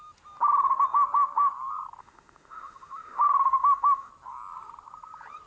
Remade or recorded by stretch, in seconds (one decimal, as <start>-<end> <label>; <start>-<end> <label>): 0.0-2.0 recorded; 2.0-4.1 remade; 4.1-5.5 recorded